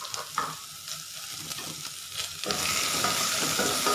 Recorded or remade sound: recorded